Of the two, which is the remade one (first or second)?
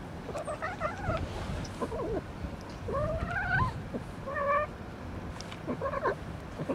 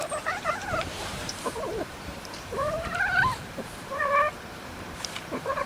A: second